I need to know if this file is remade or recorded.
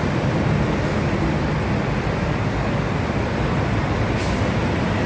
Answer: recorded